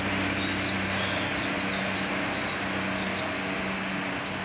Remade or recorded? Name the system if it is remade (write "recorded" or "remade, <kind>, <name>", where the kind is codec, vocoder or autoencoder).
recorded